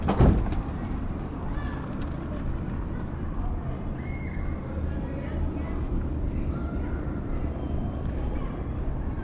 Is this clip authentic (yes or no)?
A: yes